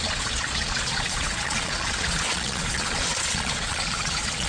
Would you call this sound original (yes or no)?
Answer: no